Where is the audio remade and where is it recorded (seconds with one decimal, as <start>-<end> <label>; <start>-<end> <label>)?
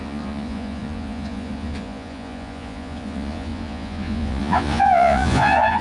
0.0-5.8 remade